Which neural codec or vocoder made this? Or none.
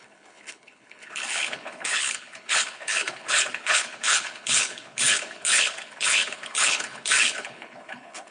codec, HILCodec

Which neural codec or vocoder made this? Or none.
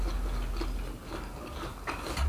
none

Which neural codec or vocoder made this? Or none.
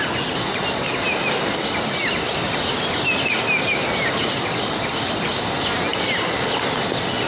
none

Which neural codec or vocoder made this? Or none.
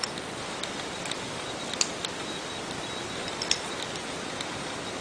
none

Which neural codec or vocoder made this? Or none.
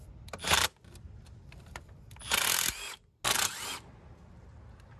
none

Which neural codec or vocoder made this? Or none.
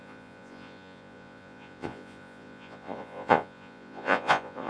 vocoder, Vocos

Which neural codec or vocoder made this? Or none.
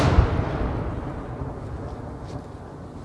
none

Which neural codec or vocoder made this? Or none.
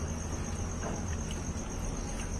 none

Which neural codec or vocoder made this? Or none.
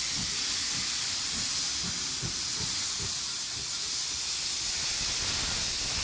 none